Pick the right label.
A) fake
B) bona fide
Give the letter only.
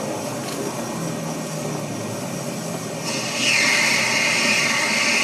B